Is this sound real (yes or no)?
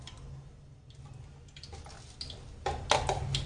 yes